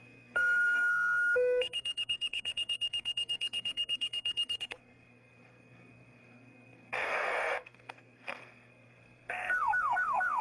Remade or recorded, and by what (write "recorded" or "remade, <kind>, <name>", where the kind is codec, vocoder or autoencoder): remade, codec, SNAC